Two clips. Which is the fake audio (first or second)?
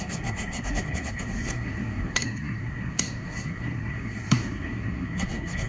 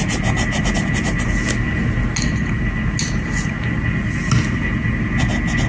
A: first